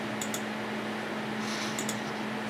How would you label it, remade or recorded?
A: recorded